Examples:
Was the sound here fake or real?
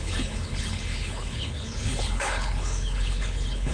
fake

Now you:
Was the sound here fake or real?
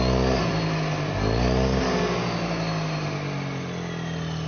real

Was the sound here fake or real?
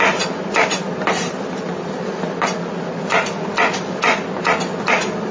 real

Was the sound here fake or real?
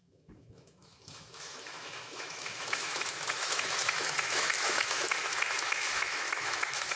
fake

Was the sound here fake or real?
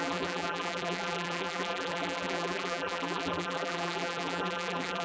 fake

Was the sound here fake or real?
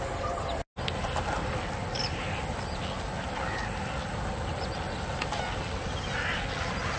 real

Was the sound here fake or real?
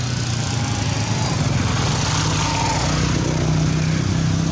real